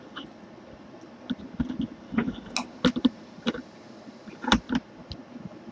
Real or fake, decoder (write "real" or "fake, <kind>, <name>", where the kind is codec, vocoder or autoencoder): real